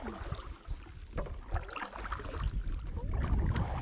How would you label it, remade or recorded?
recorded